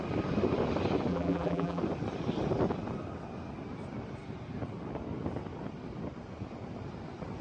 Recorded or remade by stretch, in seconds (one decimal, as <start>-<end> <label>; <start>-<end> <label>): 0.0-1.1 recorded; 1.1-1.8 remade; 1.8-7.4 recorded